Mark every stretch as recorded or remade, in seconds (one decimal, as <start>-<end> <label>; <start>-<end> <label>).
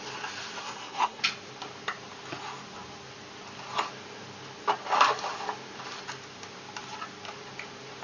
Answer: 0.0-0.6 recorded; 0.6-1.2 remade; 1.2-8.0 recorded